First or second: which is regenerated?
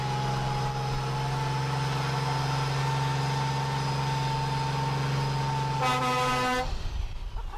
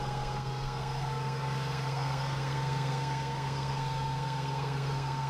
second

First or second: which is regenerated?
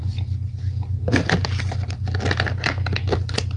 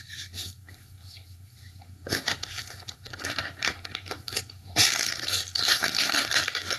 second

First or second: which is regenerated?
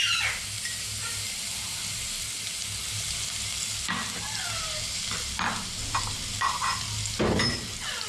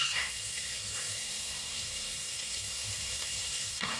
second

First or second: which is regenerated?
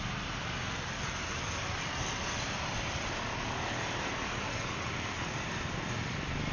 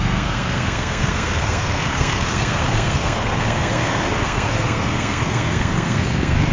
second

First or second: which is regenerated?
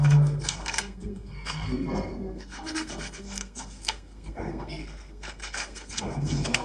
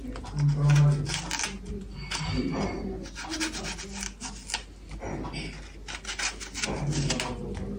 first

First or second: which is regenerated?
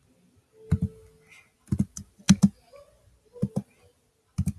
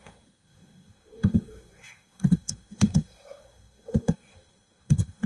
second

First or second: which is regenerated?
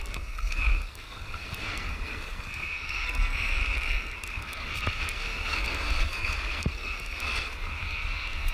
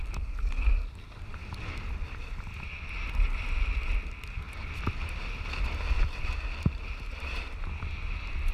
first